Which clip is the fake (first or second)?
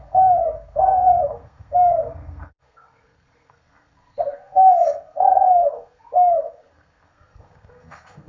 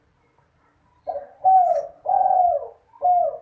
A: first